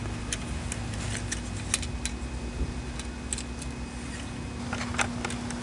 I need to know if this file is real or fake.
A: real